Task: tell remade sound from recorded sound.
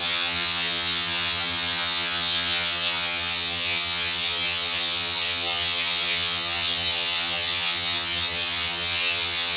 remade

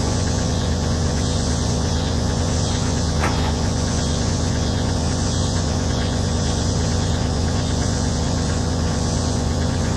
remade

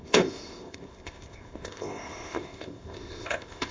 remade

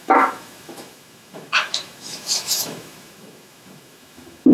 remade